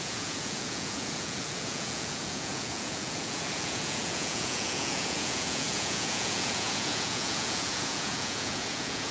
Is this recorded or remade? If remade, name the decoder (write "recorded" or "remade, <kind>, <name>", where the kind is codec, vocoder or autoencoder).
remade, vocoder, Vocos